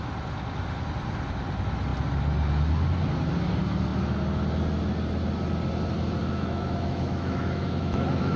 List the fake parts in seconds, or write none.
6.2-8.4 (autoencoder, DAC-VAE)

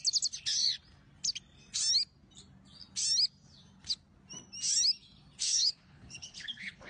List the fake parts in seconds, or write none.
5.4-6.9 (codec, HILCodec)

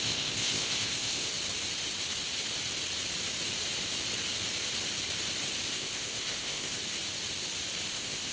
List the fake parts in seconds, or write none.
0.0-1.3 (codec, ZipCodec); 5.7-6.8; 7.9-8.3

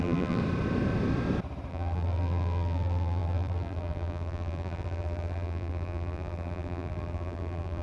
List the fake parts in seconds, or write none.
0.0-0.4 (vocoder, BigVGAN v2); 1.7-7.8